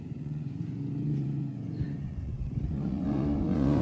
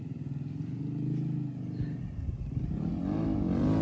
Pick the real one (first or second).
second